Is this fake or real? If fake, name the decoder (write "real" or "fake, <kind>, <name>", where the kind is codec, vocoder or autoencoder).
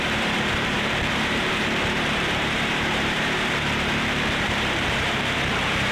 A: fake, vocoder, BigVGAN v2